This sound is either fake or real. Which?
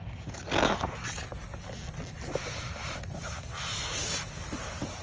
real